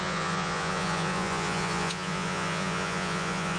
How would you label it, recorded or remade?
remade